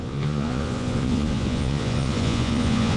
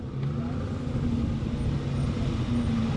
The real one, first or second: second